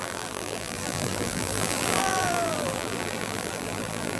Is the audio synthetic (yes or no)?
yes